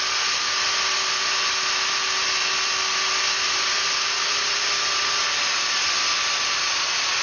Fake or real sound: real